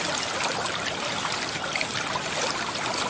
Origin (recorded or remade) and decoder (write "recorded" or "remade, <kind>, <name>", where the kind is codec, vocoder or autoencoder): recorded